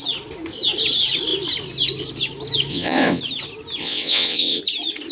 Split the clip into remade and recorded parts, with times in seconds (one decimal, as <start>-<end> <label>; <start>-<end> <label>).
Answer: 0.0-2.7 recorded; 2.7-3.2 remade; 3.2-3.8 recorded; 3.8-4.6 remade; 4.6-5.1 recorded